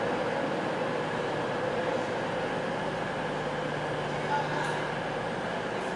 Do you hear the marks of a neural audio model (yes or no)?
no